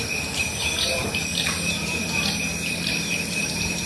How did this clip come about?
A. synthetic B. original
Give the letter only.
A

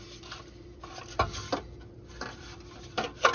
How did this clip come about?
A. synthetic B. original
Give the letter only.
A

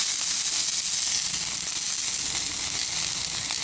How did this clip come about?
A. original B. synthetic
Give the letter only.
A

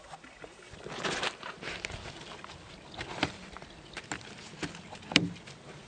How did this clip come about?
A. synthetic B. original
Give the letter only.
B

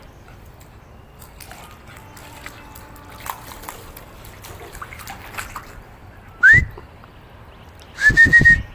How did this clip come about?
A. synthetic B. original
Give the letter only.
B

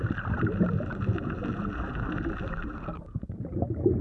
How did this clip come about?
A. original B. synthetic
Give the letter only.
A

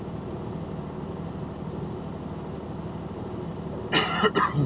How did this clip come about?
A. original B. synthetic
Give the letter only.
A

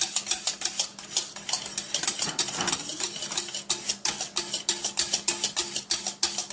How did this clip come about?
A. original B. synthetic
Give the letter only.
A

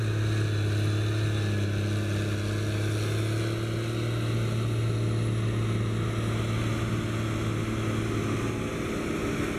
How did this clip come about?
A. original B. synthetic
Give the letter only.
A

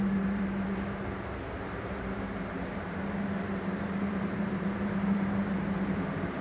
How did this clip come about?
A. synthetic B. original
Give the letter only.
A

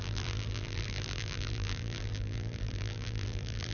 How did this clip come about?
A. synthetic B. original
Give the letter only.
A